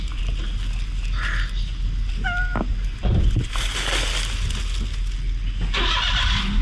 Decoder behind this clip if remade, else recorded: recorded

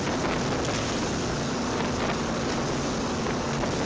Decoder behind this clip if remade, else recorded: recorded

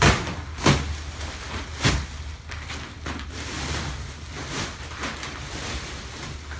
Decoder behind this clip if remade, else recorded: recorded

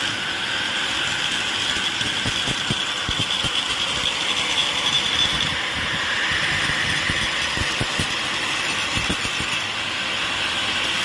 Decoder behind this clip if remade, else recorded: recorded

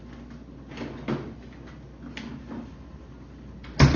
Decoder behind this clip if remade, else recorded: recorded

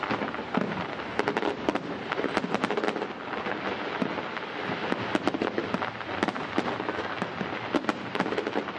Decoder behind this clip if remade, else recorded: recorded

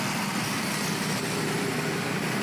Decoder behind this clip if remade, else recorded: recorded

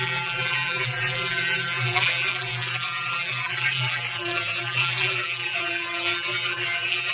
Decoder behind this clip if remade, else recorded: remade, vocoder, BigVGAN v2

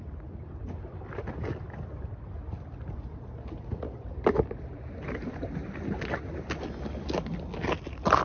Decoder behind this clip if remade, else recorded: recorded